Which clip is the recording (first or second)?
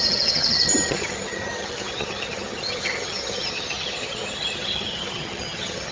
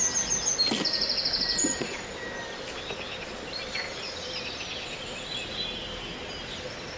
second